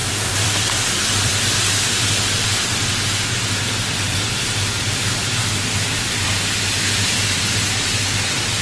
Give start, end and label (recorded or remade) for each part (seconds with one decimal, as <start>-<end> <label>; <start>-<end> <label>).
0.0-1.3 remade; 1.3-3.9 recorded; 3.9-8.6 remade